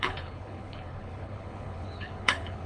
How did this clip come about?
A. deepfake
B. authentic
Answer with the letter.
A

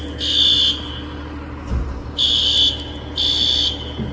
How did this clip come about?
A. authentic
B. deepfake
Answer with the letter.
A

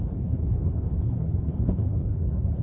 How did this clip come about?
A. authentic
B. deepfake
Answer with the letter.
B